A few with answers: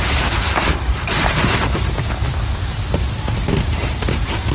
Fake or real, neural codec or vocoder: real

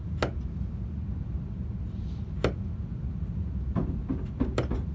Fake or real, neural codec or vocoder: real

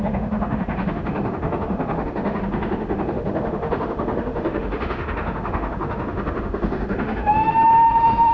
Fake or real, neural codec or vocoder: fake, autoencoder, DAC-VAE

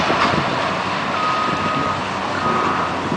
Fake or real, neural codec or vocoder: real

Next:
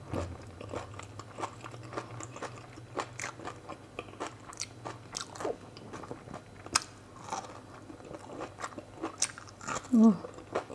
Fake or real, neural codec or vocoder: real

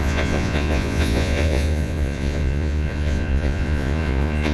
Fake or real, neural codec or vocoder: fake, vocoder, Vocos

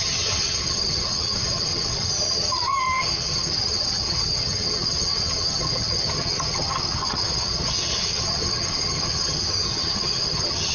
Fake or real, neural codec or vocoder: fake, vocoder, HiFi-GAN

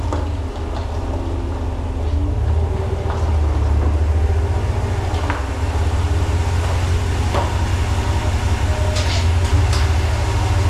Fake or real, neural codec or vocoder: real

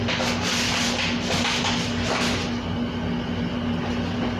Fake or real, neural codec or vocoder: real